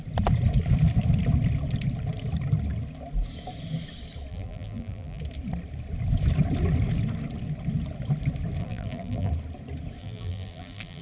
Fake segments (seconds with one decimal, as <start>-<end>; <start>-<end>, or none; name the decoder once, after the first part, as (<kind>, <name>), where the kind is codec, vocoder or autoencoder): 4.3-5.2 (vocoder, BigVGAN v2); 8.6-9.3; 10.0-11.0